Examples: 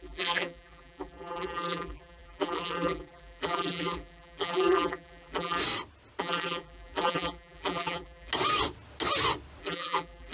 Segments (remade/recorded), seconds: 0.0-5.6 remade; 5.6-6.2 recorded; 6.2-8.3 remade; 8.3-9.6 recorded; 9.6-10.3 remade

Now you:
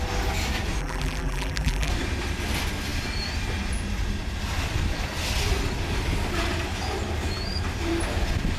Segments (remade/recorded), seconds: 0.0-0.8 recorded; 0.8-1.9 remade; 1.9-8.6 recorded

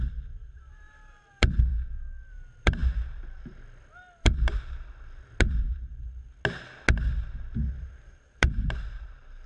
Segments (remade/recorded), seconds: 0.0-1.7 remade; 1.7-2.3 recorded; 2.3-2.8 remade; 2.8-5.5 recorded; 5.5-6.3 remade; 6.3-7.8 recorded; 7.8-9.5 remade

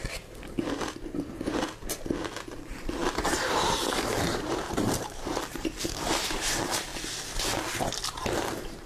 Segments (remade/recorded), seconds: 0.0-2.6 recorded; 2.6-6.9 remade; 6.9-7.9 recorded; 7.9-8.9 remade

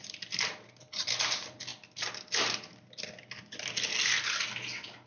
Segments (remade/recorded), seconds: 0.0-1.7 remade; 1.7-5.1 recorded

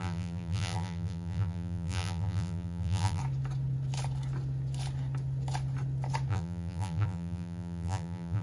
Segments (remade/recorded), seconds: 0.0-3.2 remade; 3.2-6.3 recorded; 6.3-8.4 remade